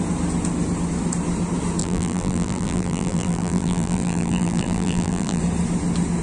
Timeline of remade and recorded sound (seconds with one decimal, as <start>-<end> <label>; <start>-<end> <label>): 0.0-1.8 recorded; 1.8-5.4 remade; 5.4-6.2 recorded